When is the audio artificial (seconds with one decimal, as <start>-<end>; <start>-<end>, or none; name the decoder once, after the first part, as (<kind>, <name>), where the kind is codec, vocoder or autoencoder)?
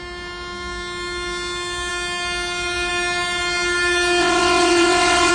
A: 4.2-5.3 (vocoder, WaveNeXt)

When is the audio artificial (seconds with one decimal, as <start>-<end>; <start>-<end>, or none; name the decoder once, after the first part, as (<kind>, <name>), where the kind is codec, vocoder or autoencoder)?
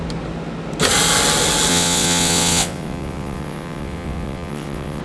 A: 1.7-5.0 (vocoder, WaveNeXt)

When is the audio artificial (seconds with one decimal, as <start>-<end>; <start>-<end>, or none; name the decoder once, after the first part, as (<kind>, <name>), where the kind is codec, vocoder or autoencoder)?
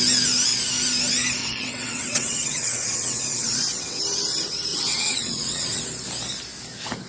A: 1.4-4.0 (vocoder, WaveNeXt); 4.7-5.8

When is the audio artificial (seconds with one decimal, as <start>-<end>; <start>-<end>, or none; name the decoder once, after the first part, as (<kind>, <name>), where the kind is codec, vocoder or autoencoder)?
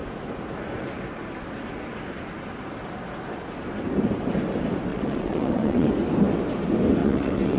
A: 4.9-5.9 (vocoder, WaveNeXt); 7.0-7.6